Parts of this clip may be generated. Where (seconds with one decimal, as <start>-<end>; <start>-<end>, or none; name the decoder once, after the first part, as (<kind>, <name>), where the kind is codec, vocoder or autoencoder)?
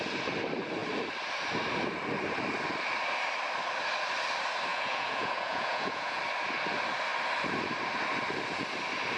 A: 4.7-6.2 (vocoder, Vocos)